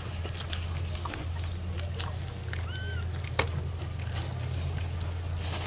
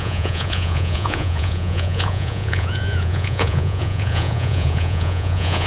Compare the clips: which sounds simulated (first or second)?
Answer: second